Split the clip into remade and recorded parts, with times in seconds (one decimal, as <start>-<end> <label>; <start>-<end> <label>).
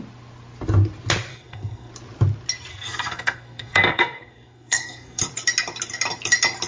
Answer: 0.0-1.3 recorded; 1.3-1.9 remade; 1.9-2.7 recorded; 2.7-5.2 remade; 5.2-6.7 recorded